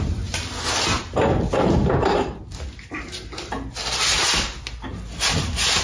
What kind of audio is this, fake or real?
real